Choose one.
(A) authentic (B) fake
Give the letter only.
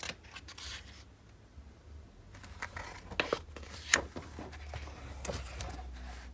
A